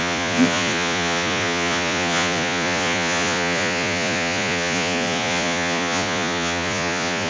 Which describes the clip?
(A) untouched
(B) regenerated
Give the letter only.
B